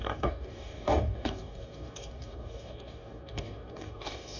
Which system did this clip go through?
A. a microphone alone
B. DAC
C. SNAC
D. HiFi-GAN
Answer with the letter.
B